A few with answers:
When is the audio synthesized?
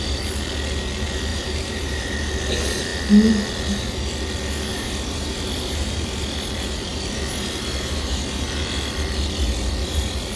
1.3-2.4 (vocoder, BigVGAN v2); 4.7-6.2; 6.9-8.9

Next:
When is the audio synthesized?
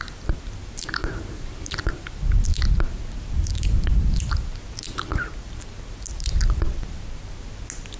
0.6-1.8 (vocoder, BigVGAN v2); 2.5-4.2